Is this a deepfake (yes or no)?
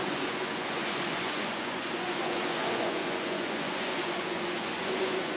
yes